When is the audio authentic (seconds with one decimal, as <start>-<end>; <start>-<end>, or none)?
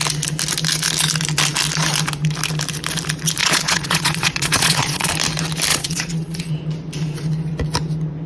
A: 0.0-3.4; 5.1-5.7; 6.5-8.3